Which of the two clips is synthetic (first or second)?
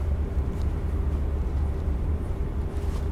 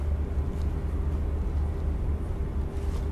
first